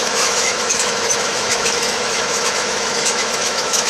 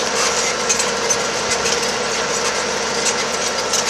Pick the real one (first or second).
second